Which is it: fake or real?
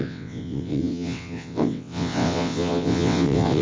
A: fake